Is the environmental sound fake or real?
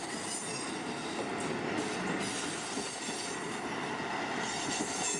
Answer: real